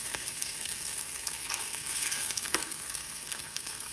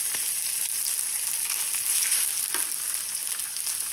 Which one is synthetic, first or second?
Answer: first